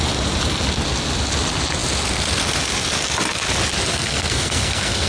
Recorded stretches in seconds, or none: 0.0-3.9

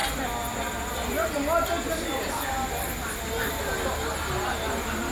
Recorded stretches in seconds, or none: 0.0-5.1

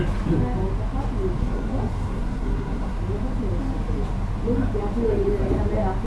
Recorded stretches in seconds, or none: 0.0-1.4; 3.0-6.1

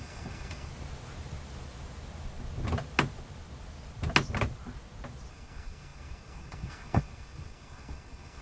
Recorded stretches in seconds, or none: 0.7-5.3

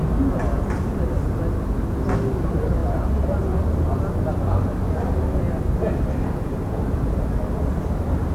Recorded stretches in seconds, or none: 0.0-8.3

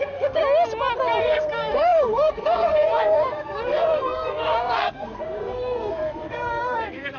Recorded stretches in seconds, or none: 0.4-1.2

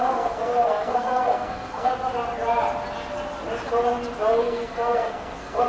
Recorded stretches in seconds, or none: 1.9-4.4